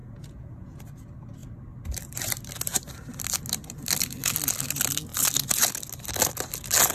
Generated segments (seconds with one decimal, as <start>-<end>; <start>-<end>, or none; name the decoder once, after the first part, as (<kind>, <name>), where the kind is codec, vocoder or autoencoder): 0.0-0.8 (vocoder, Vocos)